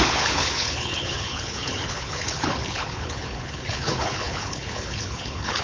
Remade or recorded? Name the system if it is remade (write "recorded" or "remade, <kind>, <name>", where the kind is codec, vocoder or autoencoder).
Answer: remade, codec, HILCodec